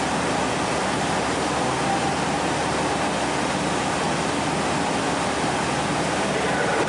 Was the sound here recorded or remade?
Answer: recorded